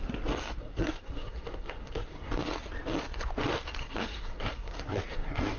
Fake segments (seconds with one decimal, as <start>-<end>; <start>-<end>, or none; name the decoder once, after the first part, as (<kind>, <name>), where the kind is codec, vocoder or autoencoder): 0.6-2.3 (codec, SNAC); 3.8-5.6